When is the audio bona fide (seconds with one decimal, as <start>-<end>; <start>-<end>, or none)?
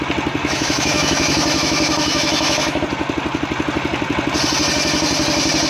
0.0-0.4; 2.8-5.7